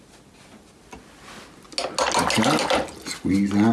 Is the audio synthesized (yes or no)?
no